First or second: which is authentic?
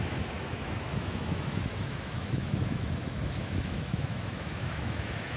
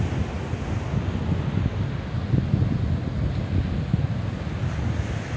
second